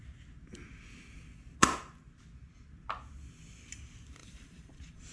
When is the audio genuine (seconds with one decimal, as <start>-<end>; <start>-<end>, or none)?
0.0-4.2